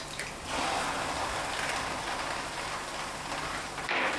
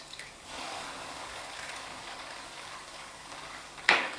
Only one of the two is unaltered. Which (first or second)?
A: first